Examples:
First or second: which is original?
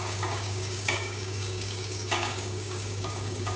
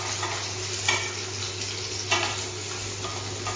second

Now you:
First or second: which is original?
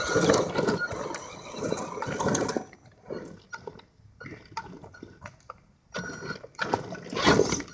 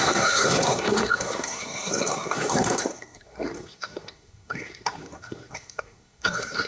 first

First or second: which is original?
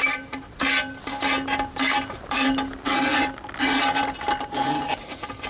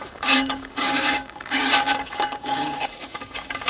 first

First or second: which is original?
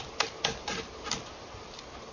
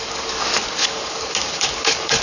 first